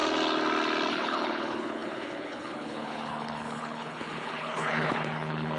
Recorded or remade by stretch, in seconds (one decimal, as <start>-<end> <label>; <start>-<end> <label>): 0.0-0.9 recorded; 0.9-5.6 remade